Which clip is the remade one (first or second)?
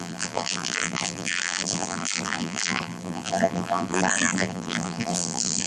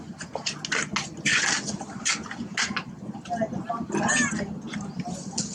first